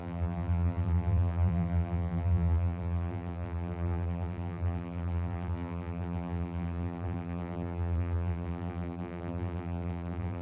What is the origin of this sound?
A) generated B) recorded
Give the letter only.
A